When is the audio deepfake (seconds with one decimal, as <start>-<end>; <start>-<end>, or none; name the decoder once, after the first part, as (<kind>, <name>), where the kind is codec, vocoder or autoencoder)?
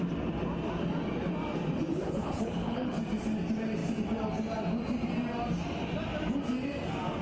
1.9-3.0 (codec, HILCodec)